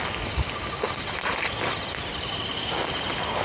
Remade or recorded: recorded